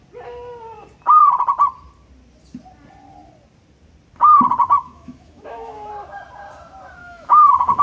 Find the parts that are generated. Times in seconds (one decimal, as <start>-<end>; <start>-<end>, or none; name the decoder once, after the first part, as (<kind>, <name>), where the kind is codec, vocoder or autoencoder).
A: 4.6-5.9 (autoencoder, DAC-VAE); 7.0-7.8